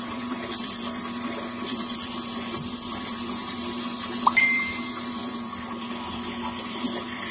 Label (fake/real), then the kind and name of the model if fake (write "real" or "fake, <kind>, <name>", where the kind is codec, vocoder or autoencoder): fake, vocoder, BigVGAN v2